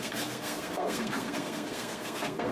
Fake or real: fake